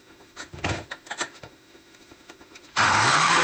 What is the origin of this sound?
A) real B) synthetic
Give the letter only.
B